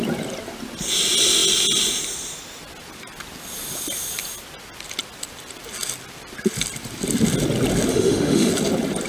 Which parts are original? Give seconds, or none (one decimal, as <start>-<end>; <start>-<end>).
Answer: 0.0-7.9; 8.5-9.1